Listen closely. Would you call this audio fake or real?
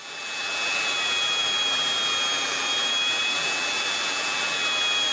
fake